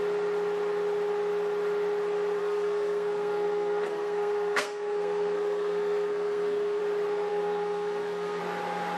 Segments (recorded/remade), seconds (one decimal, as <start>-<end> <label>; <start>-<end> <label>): 0.0-2.4 recorded; 2.4-6.8 remade; 6.8-7.3 recorded; 7.3-8.4 remade; 8.4-9.0 recorded